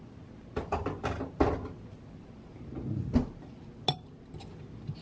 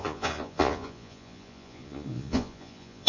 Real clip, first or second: first